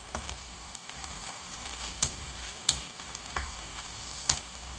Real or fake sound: fake